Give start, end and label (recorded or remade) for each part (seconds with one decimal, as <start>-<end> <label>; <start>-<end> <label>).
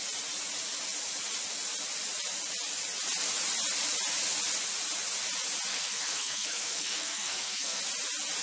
0.0-5.7 recorded; 5.7-7.8 remade; 7.8-8.4 recorded